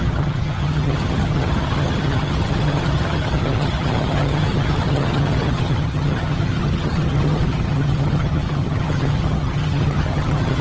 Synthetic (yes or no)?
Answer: yes